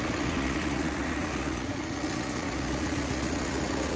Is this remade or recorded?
remade